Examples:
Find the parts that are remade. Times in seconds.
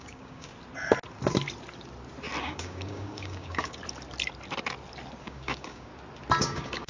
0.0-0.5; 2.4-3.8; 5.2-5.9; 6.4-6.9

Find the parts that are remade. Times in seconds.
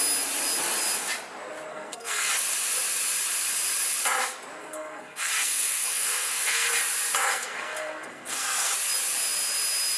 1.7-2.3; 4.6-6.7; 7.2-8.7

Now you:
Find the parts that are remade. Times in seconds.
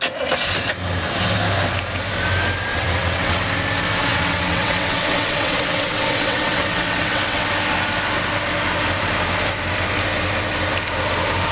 2.7-3.4; 4.1-7.5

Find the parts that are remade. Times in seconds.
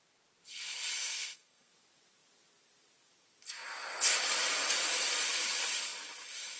1.1-1.7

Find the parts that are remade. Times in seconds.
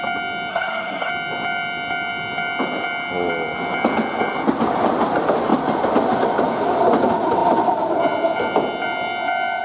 0.5-1.1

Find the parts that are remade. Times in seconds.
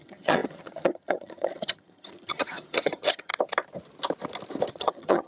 0.0-3.3; 4.7-5.3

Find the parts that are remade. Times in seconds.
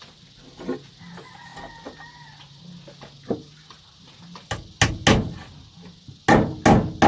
none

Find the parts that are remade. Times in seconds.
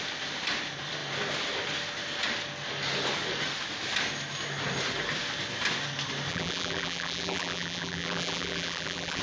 6.3-9.2